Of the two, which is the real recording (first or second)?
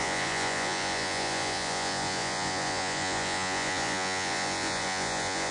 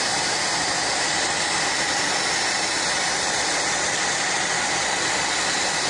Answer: second